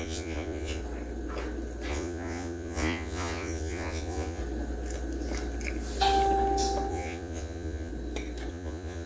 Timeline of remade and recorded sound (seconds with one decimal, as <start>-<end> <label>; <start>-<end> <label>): 0.0-0.8 remade; 0.8-1.9 recorded; 1.9-4.4 remade; 4.4-6.9 recorded; 6.9-7.9 remade; 7.9-8.5 recorded; 8.5-9.1 remade